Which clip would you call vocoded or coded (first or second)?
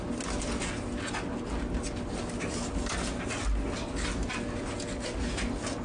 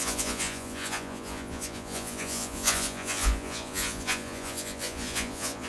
second